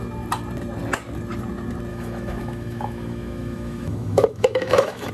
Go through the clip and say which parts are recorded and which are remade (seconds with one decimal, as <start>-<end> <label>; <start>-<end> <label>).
0.0-1.9 recorded; 1.9-5.1 remade